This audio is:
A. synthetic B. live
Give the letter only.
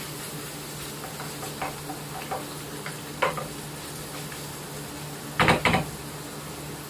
B